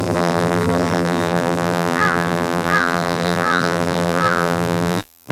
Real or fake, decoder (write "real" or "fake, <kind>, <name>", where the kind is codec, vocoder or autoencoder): fake, vocoder, BigVGAN v2